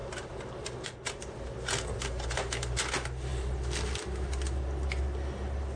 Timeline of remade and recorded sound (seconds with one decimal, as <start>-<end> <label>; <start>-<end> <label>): 0.0-5.8 recorded